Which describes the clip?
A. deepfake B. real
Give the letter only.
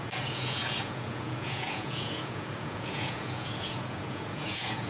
A